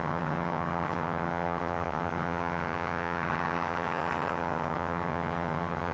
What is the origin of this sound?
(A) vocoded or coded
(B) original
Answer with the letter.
A